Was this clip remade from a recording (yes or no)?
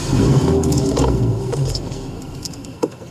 yes